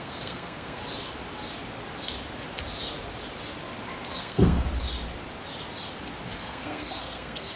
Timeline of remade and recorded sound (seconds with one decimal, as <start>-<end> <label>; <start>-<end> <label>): 0.0-0.8 remade; 0.8-4.2 recorded; 4.2-4.7 remade; 4.7-6.4 recorded; 6.4-7.6 remade